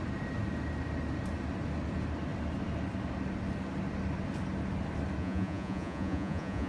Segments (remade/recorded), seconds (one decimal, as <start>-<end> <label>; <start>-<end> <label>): 0.0-5.2 recorded; 5.2-6.7 remade

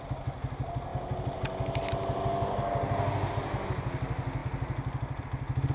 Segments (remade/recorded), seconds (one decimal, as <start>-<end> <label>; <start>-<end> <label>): 0.0-5.7 recorded

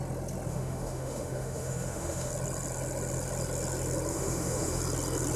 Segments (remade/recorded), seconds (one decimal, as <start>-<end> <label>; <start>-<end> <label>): 0.0-0.5 recorded; 0.5-2.3 remade; 2.3-4.1 recorded; 4.1-4.8 remade; 4.8-5.4 recorded

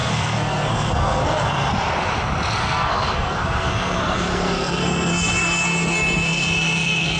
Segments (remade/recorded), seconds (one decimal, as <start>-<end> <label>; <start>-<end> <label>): 0.0-1.7 remade; 1.7-2.6 recorded; 2.6-7.2 remade

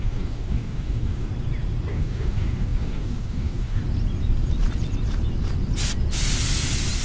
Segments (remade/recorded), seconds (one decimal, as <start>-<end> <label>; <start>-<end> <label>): 0.0-1.3 remade; 1.3-1.9 recorded; 1.9-3.8 remade; 3.8-7.0 recorded